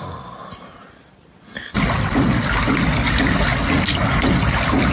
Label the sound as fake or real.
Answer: real